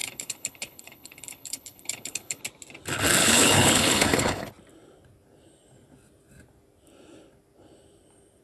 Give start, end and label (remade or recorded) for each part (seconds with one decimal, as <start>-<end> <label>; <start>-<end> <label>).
0.0-2.4 remade; 2.4-3.2 recorded; 3.2-4.5 remade; 4.5-8.4 recorded